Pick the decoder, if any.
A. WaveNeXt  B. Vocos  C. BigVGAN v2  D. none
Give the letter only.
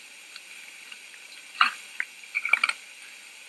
D